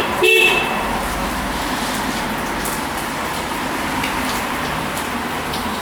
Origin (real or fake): fake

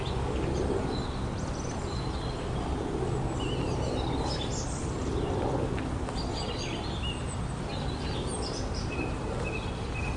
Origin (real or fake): real